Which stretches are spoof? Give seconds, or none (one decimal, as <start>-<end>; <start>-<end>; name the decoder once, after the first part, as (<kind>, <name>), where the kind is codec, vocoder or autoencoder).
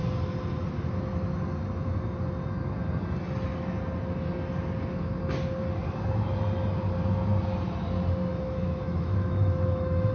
8.3-10.1 (autoencoder, DAC-VAE)